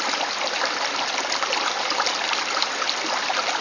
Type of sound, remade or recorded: recorded